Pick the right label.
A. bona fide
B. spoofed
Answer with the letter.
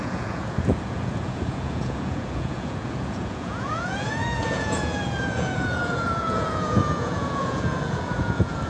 B